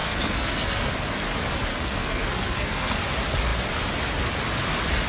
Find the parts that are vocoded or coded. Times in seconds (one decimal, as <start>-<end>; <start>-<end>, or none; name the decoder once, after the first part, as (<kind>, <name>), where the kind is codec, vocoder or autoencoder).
0.0-0.9 (codec, SNAC); 1.7-2.9